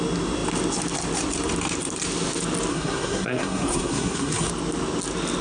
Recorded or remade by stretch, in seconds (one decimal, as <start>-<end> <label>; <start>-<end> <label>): 0.0-2.7 recorded; 2.7-4.5 remade; 4.5-5.4 recorded